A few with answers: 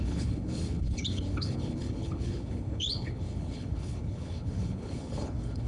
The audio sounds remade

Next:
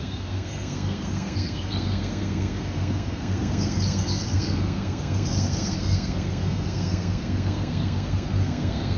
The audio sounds remade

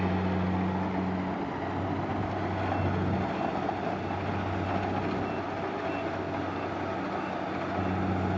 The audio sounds recorded